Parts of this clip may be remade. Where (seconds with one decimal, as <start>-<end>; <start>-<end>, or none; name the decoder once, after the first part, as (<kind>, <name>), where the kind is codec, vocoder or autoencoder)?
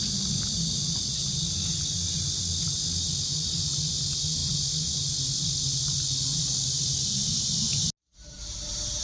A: none